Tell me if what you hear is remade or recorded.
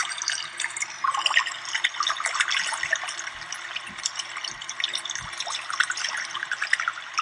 recorded